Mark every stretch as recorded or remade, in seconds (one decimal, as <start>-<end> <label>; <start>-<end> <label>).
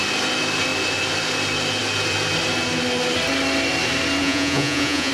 0.0-4.2 recorded; 4.2-5.1 remade